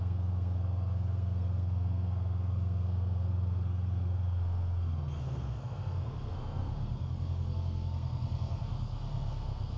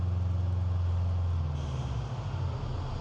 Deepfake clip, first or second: first